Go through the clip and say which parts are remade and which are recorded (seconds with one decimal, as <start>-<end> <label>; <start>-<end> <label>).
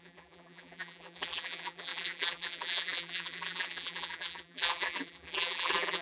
0.0-6.0 remade